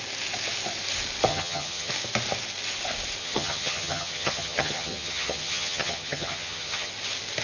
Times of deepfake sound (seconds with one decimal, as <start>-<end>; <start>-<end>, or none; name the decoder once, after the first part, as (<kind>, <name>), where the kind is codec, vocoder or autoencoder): 1.3-1.9 (vocoder, HiFi-GAN); 3.2-6.9